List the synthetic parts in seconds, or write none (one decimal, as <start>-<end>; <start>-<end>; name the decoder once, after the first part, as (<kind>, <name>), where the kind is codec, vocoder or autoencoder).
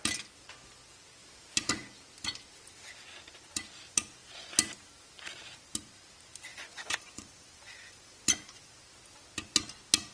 6.5-8.8 (vocoder, Vocos)